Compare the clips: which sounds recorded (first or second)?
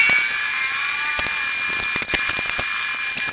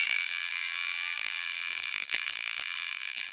first